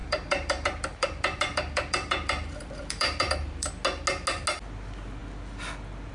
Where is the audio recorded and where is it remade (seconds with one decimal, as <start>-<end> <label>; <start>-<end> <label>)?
0.0-3.7 remade; 3.7-6.1 recorded